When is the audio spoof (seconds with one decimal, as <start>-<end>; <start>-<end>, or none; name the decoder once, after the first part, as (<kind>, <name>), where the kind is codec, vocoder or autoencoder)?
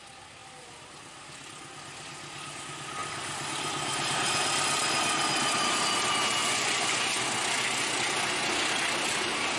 6.4-7.2 (vocoder, Vocos)